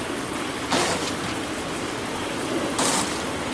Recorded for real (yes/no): yes